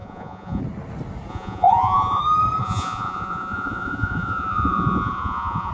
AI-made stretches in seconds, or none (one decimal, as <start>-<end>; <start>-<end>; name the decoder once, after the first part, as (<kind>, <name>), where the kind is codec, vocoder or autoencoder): 0.0-0.6 (vocoder, Vocos); 1.3-2.2; 2.6-5.7